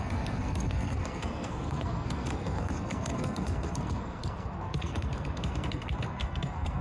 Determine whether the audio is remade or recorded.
remade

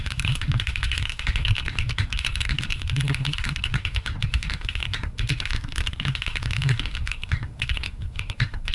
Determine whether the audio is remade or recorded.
remade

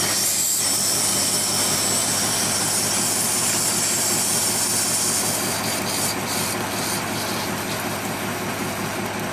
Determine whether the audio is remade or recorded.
recorded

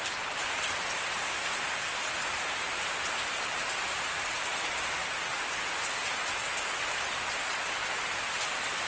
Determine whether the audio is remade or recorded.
recorded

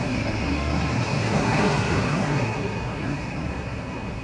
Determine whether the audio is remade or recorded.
remade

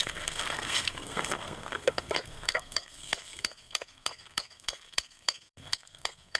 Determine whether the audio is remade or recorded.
remade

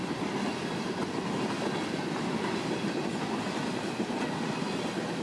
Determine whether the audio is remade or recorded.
recorded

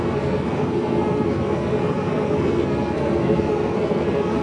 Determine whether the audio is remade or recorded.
remade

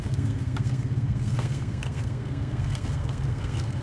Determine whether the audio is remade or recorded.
remade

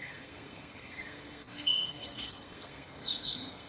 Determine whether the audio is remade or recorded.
remade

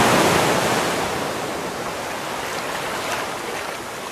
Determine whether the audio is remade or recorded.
recorded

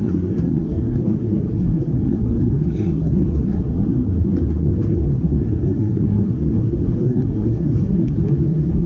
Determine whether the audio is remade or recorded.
remade